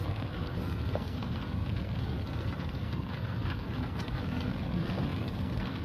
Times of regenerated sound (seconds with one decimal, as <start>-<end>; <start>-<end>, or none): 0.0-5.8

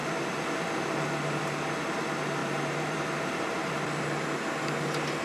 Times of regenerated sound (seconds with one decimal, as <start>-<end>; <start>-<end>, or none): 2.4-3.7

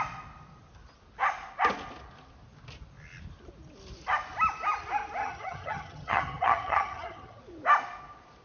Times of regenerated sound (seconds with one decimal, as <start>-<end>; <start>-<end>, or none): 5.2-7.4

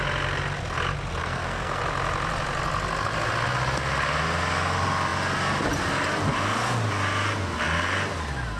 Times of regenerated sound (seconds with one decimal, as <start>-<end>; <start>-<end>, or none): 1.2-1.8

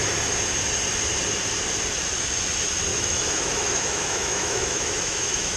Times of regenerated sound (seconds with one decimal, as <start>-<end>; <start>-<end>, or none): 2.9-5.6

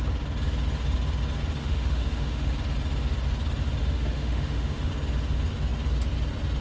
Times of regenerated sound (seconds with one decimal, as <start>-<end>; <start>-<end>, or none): 1.6-2.5; 3.8-4.9

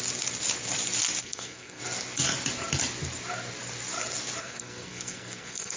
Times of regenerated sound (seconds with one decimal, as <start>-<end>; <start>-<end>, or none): 1.2-1.8; 4.4-5.8